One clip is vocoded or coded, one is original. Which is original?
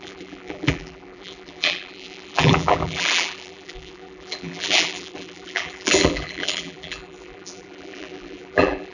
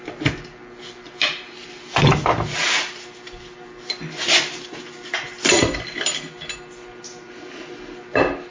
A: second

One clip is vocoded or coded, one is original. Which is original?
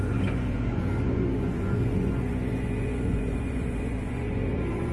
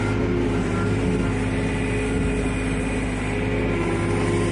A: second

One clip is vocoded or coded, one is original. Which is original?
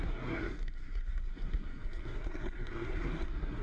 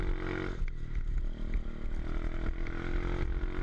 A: second